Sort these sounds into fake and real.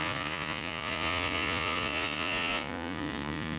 fake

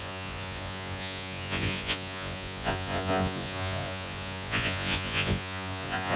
fake